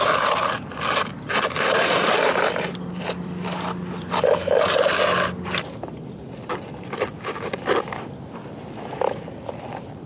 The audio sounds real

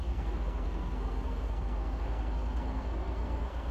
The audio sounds fake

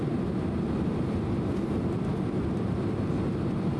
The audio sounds real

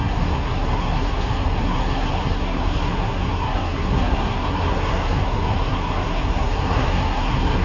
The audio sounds fake